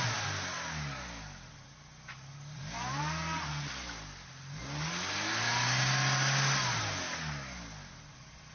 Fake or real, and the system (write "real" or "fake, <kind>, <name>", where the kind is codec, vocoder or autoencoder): real